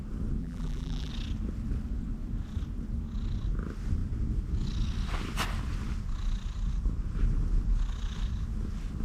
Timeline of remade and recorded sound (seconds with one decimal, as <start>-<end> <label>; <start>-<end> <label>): 0.0-0.4 recorded; 0.4-1.1 remade; 1.1-9.0 recorded